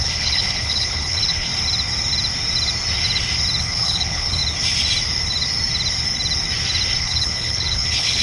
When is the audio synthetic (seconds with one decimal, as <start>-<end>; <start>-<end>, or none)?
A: 0.0-1.5; 3.6-4.4; 7.0-8.2